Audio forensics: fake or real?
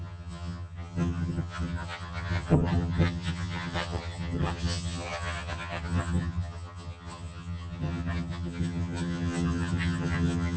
fake